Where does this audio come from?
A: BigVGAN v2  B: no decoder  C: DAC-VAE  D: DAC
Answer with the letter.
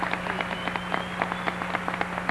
B